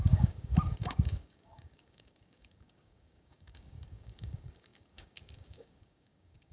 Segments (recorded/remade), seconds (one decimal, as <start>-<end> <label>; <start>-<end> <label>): 0.0-6.5 remade